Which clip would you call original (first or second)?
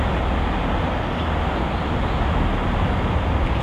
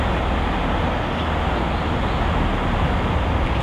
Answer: second